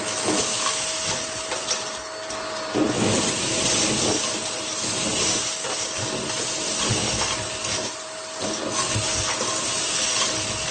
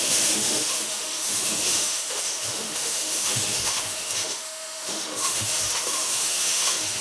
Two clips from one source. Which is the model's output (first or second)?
second